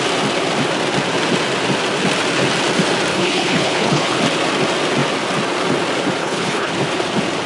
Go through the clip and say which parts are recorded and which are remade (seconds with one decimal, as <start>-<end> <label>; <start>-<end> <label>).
0.0-3.1 recorded; 3.1-4.2 remade; 4.2-6.2 recorded; 6.2-6.7 remade; 6.7-7.5 recorded